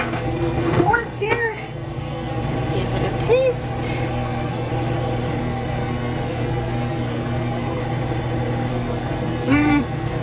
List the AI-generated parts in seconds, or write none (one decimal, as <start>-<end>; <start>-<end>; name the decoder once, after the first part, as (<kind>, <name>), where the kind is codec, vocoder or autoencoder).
0.0-2.4 (codec, SNAC); 4.1-4.7; 5.4-7.8; 8.7-10.2